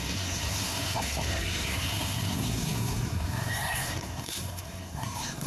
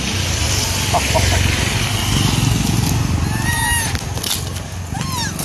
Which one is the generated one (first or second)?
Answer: first